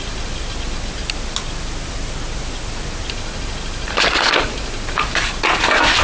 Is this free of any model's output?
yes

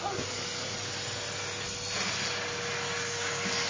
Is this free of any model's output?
yes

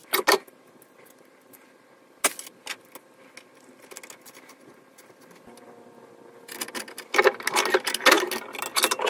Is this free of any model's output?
yes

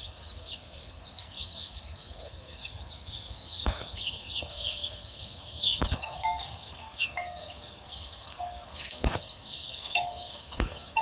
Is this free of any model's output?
no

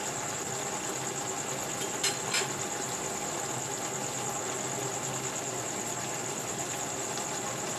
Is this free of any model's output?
yes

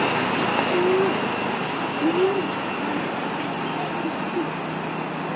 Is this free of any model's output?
yes